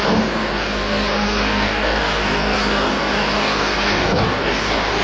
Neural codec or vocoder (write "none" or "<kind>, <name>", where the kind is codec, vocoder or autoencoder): codec, DAC